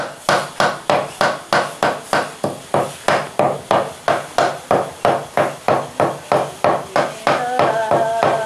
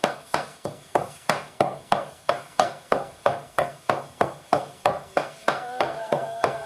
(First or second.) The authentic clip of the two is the first